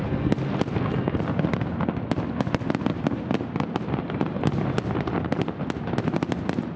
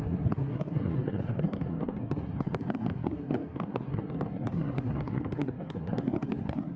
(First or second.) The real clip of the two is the first